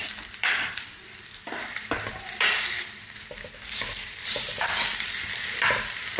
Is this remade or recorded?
remade